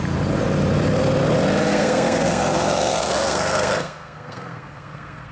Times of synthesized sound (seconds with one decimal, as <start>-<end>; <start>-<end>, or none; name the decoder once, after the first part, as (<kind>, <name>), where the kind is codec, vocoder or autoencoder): 1.7-5.3 (codec, SNAC)

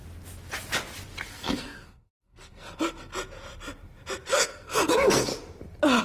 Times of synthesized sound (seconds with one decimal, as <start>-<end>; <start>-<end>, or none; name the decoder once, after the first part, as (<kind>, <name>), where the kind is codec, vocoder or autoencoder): 1.3-3.1 (codec, SNAC); 4.3-5.3

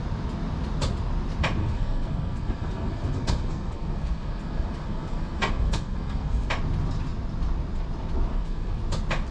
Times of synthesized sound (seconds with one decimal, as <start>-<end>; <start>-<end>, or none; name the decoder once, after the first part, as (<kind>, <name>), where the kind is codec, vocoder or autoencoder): 1.6-6.5 (codec, SNAC); 8.3-8.8

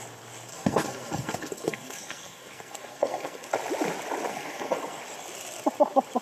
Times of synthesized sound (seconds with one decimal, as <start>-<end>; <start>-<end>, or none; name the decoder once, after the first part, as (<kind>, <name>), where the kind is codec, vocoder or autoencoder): 0.5-3.5 (codec, SNAC); 4.3-5.0